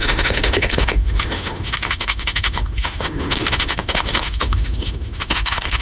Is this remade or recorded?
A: remade